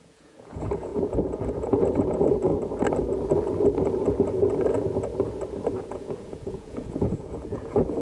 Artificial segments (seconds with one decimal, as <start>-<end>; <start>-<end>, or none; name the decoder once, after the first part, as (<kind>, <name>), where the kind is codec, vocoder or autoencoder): 0.0-2.5 (vocoder, Vocos); 5.9-8.0